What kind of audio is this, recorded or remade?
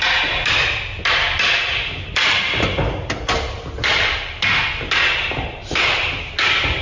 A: recorded